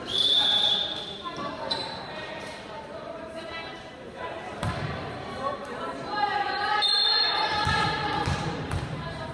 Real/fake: fake